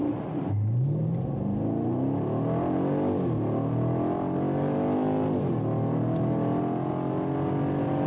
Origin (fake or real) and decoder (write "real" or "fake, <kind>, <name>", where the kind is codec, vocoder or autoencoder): real